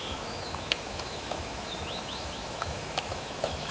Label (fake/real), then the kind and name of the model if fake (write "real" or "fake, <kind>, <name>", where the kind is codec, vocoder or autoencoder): fake, autoencoder, DAC-VAE